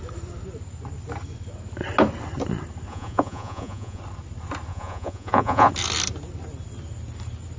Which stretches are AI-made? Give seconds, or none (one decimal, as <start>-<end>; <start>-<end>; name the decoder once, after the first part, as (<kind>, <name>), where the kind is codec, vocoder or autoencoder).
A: 2.9-4.0 (vocoder, Vocos); 4.7-5.7